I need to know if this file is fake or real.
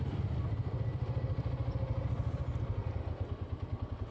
real